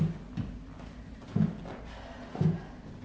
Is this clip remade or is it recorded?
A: recorded